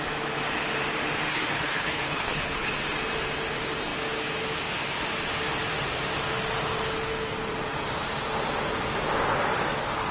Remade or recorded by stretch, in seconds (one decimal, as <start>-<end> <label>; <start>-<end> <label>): 0.0-1.3 recorded; 1.3-2.7 remade; 2.7-10.1 recorded